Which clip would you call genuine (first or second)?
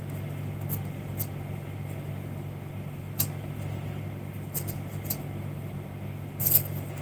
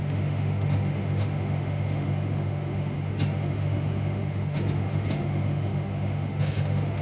first